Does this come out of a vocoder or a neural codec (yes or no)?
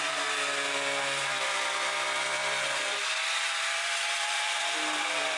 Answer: yes